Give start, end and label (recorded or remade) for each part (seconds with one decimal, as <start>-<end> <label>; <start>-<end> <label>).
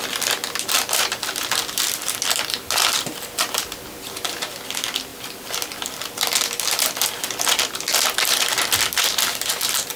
0.0-10.0 recorded